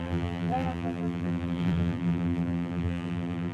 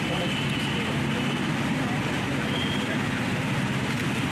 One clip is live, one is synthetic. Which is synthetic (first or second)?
first